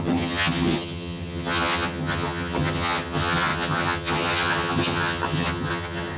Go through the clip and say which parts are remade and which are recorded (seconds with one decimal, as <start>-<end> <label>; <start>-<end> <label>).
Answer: 0.0-6.2 remade